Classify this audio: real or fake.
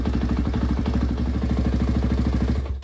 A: real